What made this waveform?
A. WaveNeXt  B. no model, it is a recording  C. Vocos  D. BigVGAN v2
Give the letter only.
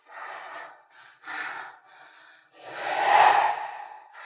B